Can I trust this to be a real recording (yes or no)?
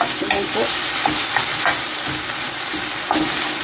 yes